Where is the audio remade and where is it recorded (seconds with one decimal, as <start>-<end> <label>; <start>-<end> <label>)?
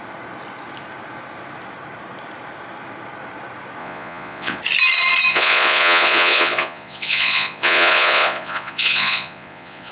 0.0-3.8 recorded; 3.8-4.6 remade; 4.6-5.3 recorded; 5.3-9.9 remade